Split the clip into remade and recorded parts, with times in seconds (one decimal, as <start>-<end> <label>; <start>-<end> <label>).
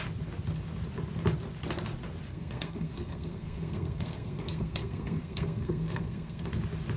0.0-2.3 recorded; 2.3-6.5 remade; 6.5-7.0 recorded